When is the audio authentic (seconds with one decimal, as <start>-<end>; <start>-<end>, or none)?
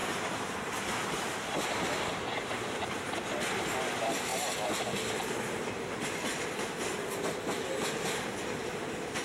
2.5-9.2